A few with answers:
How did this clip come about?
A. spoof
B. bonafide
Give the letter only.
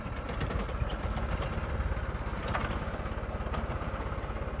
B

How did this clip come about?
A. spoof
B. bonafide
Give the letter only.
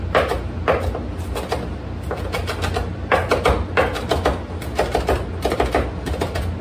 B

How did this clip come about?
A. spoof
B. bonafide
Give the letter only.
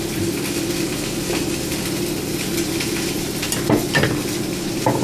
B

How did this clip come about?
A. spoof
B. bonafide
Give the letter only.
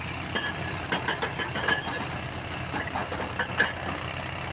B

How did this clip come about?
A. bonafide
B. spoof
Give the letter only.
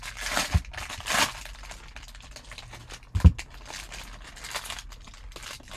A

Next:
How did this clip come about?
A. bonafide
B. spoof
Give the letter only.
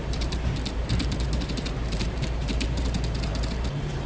B